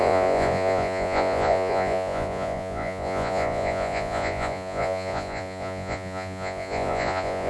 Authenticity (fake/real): fake